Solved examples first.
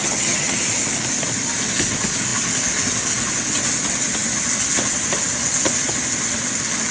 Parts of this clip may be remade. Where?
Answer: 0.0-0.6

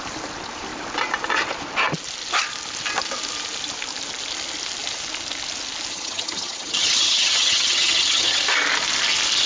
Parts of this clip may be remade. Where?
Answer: 5.9-8.4

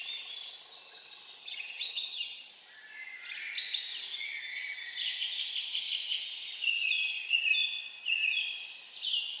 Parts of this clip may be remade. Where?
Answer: 1.4-2.5; 6.7-7.3

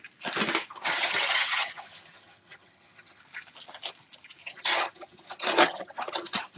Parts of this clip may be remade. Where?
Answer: 0.7-3.2; 4.4-6.6

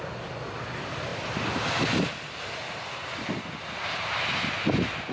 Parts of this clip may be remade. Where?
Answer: none

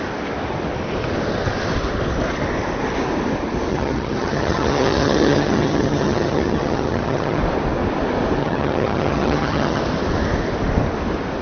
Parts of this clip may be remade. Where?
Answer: 3.7-7.4; 8.4-9.8

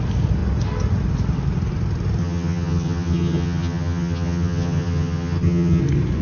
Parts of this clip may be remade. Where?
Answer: 2.2-5.8

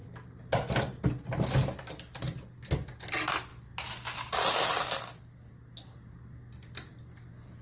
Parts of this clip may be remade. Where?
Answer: none